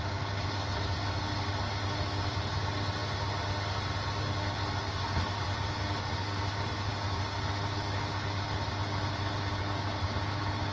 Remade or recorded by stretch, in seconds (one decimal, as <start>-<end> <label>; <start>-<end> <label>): 0.0-10.7 recorded